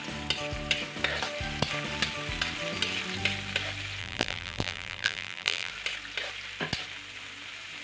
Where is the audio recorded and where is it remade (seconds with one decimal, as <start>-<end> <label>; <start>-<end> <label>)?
0.0-4.0 recorded; 4.0-5.7 remade; 5.7-7.8 recorded